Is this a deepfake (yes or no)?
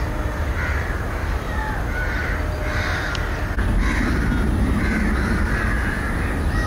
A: no